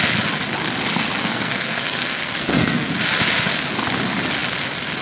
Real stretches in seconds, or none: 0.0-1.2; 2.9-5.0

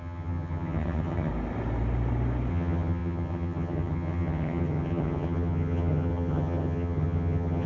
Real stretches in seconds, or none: 1.3-2.5

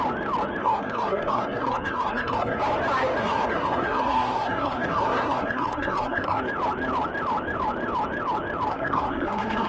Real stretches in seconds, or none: 0.0-0.6; 2.6-3.2; 6.4-8.7

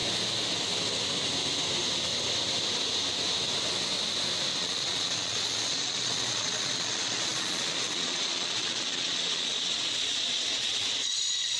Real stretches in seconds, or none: 0.0-4.6

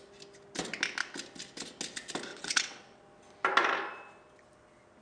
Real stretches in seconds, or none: 0.0-2.3; 3.0-5.0

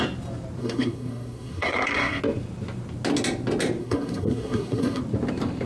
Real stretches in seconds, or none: 0.0-0.6; 2.2-3.8; 5.0-5.7

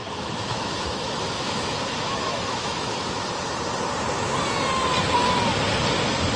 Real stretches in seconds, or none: 3.2-6.4

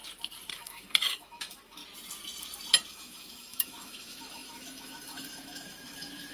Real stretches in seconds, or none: 0.0-0.5; 1.8-2.9